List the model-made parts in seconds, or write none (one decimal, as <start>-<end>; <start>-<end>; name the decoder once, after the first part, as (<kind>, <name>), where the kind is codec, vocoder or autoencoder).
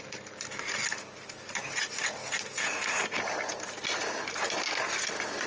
none